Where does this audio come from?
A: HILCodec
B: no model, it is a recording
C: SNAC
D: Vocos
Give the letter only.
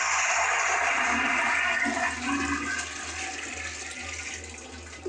B